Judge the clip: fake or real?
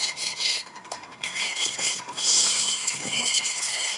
fake